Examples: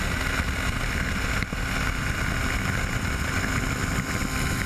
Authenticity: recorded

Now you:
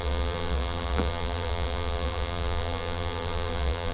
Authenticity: remade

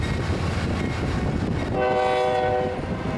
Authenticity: recorded